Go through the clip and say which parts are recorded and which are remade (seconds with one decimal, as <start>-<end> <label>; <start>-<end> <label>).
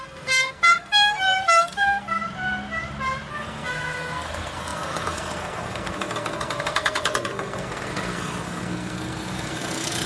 0.0-2.2 remade; 2.2-3.3 recorded; 3.3-10.1 remade